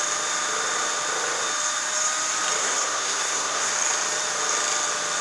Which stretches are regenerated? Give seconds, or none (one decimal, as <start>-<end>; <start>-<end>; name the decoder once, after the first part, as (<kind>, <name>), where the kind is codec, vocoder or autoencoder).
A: 2.6-3.7 (codec, SNAC)